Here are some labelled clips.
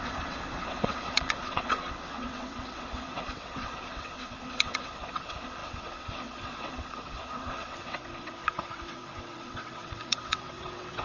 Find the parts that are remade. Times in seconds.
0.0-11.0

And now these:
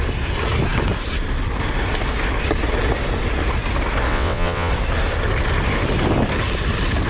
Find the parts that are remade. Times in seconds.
4.1-4.7

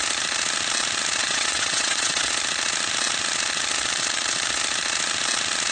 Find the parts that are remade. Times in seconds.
1.2-2.3

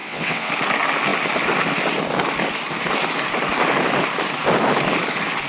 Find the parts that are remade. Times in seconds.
0.0-0.5

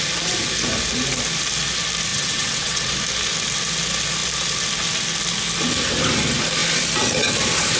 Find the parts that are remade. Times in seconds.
2.1-2.9

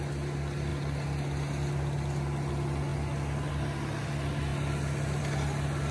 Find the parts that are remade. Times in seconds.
none